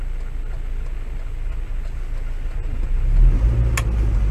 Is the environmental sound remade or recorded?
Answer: recorded